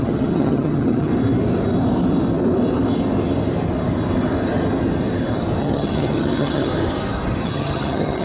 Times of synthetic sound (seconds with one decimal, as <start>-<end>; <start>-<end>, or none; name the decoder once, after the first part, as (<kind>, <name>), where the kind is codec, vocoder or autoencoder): 0.0-1.1 (vocoder, HiFi-GAN); 5.6-6.7; 7.4-8.2